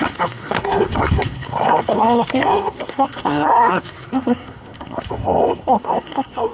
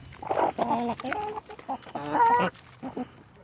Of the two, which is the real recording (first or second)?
second